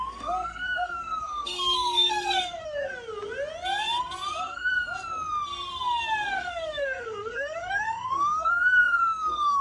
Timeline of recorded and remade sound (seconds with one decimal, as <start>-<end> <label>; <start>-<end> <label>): 0.0-2.9 remade; 2.9-4.0 recorded; 4.0-4.7 remade; 4.7-6.3 recorded; 6.3-9.6 remade